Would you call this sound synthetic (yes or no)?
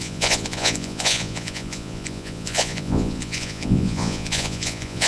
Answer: yes